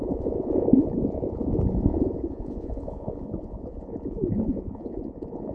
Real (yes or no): no